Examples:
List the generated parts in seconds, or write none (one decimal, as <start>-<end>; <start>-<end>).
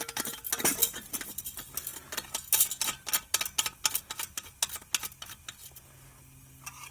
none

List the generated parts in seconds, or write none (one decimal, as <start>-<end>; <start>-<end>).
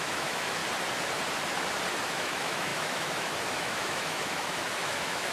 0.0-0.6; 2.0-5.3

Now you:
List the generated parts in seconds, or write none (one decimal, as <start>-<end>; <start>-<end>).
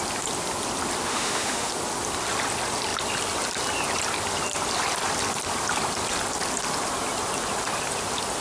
1.1-1.7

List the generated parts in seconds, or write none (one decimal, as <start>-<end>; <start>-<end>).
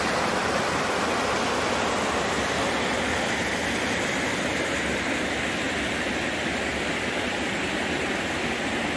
none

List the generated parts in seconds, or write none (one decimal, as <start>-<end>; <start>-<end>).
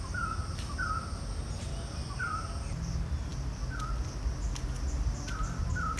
none